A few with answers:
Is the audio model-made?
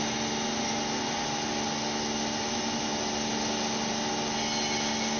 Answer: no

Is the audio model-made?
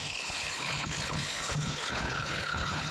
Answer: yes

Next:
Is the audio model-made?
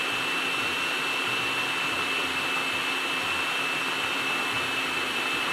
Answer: no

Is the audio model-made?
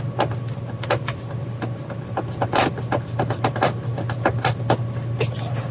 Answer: no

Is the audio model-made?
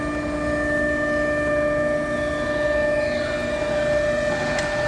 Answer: no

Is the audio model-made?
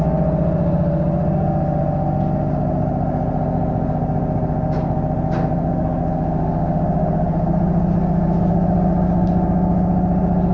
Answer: no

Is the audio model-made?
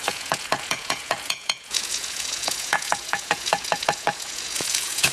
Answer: yes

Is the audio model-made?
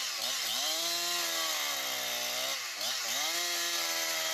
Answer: no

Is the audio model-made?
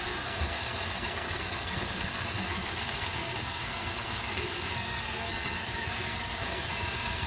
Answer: yes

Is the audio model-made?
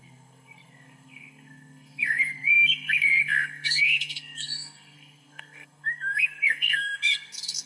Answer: yes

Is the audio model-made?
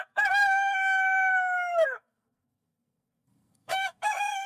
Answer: yes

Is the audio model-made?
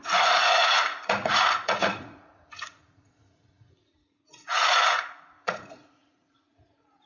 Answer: yes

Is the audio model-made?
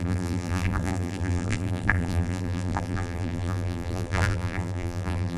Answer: yes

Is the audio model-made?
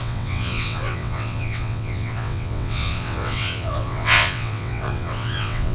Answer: yes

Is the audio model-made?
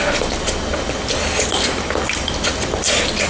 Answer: no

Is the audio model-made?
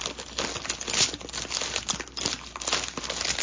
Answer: no